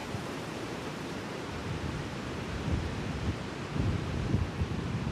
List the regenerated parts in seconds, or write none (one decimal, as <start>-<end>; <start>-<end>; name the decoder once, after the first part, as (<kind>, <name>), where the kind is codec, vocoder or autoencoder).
0.0-1.2 (vocoder, BigVGAN v2); 1.6-5.1